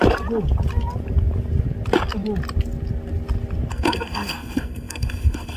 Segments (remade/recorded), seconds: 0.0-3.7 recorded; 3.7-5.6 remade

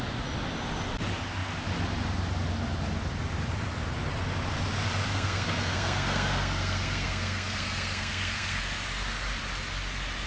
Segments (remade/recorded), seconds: 0.0-5.1 recorded; 5.1-8.6 remade; 8.6-10.3 recorded

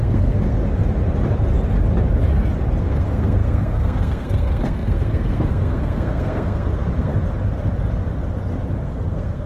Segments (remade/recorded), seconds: 0.0-0.6 remade; 0.6-2.8 recorded; 2.8-7.1 remade; 7.1-8.8 recorded; 8.8-9.5 remade

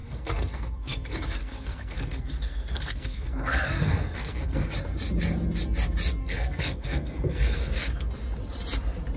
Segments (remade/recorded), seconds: 0.0-4.7 remade; 4.7-6.2 recorded; 6.2-8.0 remade; 8.0-9.2 recorded

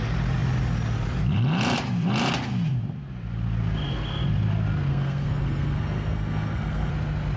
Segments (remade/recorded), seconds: 0.0-4.9 recorded; 4.9-6.9 remade; 6.9-7.4 recorded

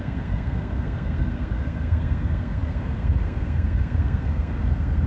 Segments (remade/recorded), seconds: 0.0-5.1 remade

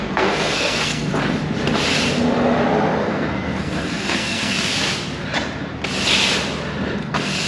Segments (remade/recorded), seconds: 0.0-1.1 remade; 1.1-3.0 recorded; 3.0-4.7 remade; 4.7-7.0 recorded; 7.0-7.5 remade